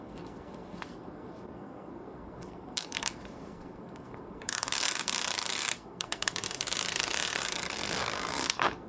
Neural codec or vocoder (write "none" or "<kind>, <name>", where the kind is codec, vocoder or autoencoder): codec, SNAC